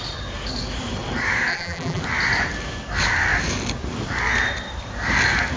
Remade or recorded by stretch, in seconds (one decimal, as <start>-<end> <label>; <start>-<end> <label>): 0.0-1.5 recorded; 1.5-2.0 remade; 2.0-5.6 recorded